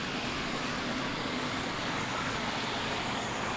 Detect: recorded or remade remade